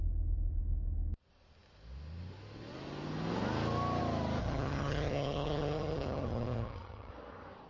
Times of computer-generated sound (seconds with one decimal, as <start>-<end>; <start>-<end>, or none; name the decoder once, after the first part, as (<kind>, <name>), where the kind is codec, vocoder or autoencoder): 4.4-7.1 (vocoder, HiFi-GAN)